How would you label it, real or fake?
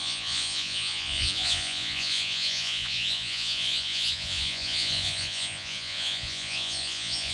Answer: fake